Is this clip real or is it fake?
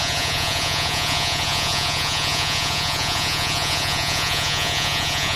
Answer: fake